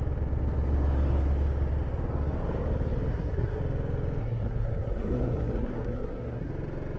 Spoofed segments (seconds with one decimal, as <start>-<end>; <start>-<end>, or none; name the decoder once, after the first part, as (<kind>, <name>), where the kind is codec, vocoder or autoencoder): 3.1-3.6 (codec, SNAC); 4.2-6.5